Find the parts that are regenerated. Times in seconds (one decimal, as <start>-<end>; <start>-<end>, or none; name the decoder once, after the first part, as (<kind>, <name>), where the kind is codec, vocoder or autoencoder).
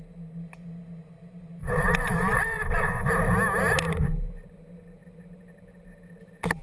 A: 1.6-3.1 (vocoder, WaveNeXt)